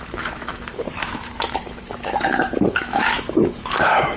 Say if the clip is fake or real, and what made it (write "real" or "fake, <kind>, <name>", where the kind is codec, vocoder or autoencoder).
fake, autoencoder, DAC-VAE